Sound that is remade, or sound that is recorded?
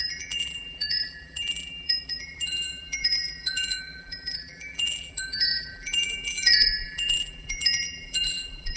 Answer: remade